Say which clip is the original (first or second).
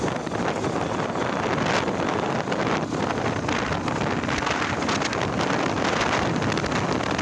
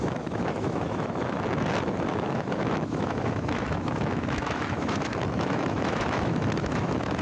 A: first